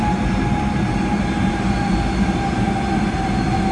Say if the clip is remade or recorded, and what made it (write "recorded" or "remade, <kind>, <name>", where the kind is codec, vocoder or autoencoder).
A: recorded